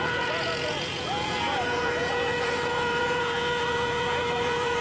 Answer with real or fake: fake